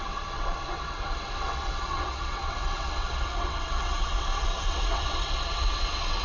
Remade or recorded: remade